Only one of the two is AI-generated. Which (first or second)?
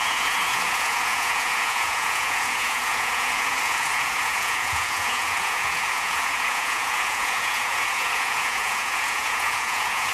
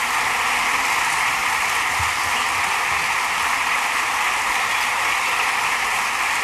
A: first